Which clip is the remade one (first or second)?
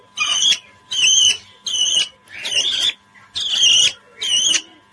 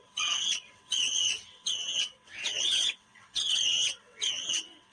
second